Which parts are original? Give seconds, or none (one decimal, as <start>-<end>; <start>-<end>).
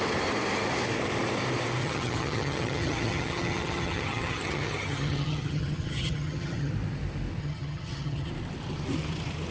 0.0-1.8; 6.7-7.4; 8.3-9.5